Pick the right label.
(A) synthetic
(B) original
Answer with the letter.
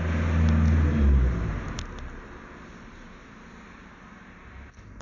B